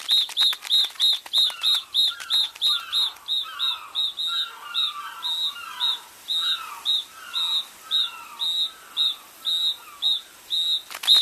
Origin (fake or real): real